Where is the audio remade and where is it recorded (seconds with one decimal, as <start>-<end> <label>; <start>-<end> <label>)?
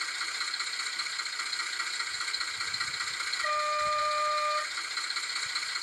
0.0-5.8 recorded